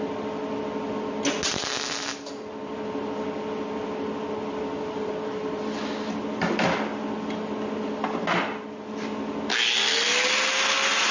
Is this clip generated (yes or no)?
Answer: no